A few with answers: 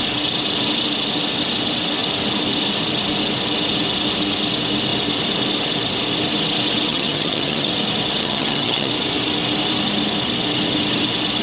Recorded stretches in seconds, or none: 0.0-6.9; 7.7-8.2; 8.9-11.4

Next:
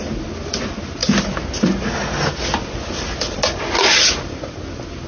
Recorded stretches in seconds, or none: 0.0-5.1

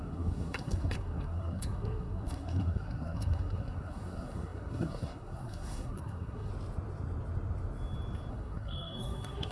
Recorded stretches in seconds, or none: 6.5-8.3

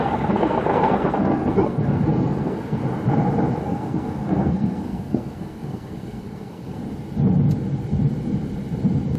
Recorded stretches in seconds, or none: 2.8-3.6; 6.8-9.2

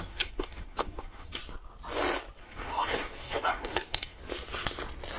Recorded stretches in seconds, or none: 1.4-2.4; 4.2-5.2